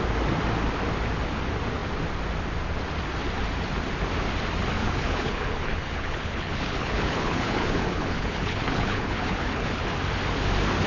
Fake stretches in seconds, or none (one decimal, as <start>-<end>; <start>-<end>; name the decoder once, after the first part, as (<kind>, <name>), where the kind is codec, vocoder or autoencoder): 4.8-9.8 (codec, HILCodec)